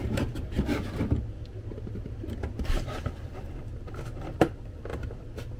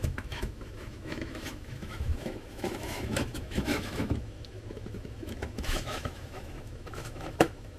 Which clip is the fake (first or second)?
second